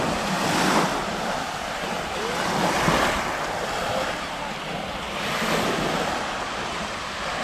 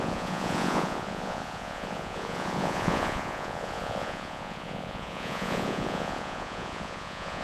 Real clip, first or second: first